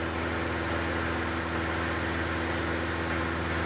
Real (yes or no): yes